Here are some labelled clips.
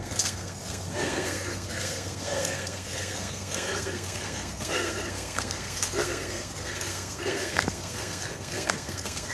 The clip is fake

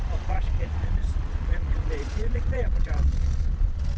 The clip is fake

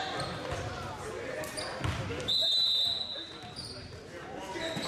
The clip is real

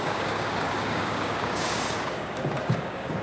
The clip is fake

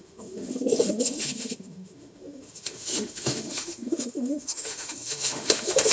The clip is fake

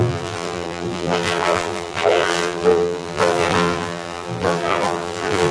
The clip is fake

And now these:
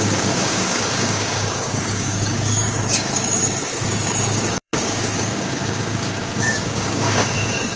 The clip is fake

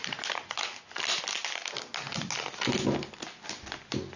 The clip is real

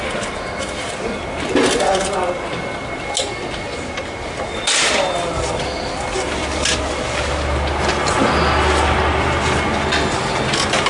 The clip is real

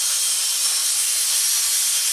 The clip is real